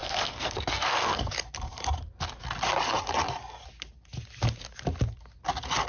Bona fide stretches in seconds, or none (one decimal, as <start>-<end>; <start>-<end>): 1.3-5.9